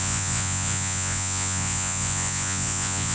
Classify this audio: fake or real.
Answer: fake